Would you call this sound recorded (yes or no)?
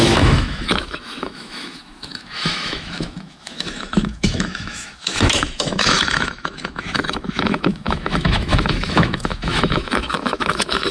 no